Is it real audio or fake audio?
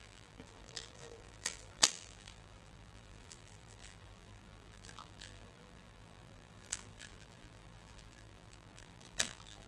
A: fake